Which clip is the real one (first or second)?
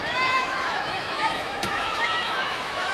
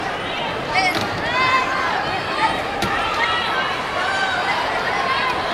second